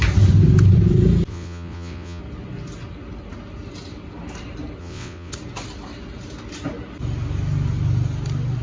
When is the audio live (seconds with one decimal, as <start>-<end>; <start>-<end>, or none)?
0.0-1.3; 2.2-4.8; 5.3-8.6